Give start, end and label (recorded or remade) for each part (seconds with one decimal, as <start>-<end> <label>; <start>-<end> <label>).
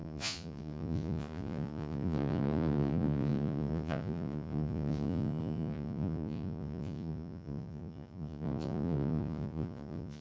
0.0-10.2 remade